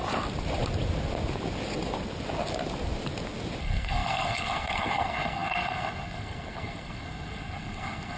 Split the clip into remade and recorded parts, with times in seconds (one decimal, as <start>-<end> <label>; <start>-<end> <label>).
0.0-3.6 recorded; 3.6-8.2 remade